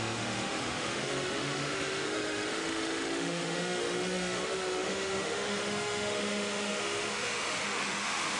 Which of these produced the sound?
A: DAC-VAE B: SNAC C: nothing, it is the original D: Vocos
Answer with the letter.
A